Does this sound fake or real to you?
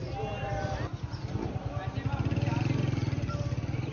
real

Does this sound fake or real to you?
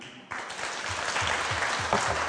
real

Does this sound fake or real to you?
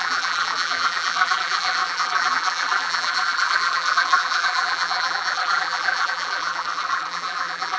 fake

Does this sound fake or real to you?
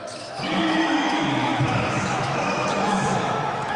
fake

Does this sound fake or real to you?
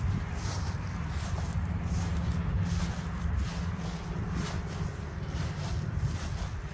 real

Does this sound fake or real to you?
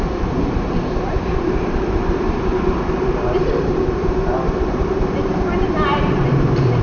fake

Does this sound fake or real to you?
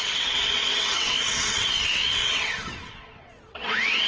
fake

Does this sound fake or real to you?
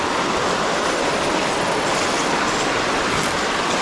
real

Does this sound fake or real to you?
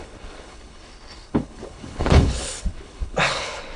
fake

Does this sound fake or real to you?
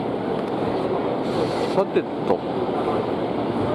real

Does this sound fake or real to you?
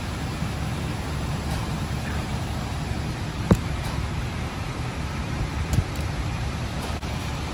fake